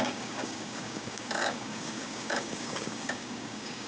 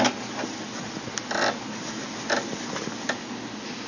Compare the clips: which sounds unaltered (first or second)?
second